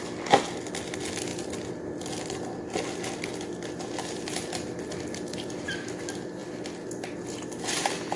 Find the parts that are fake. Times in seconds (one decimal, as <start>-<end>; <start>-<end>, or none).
none